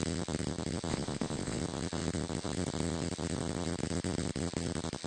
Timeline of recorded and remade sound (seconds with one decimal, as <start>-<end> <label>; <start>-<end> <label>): 0.0-0.9 recorded; 0.9-1.6 remade; 1.6-5.1 recorded